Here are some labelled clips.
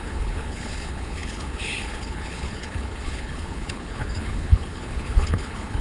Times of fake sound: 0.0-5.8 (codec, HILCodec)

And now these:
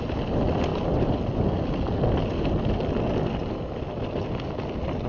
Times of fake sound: none